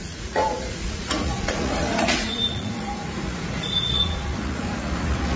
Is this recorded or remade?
remade